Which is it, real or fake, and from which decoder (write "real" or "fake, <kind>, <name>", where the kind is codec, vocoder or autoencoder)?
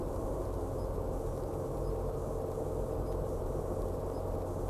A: real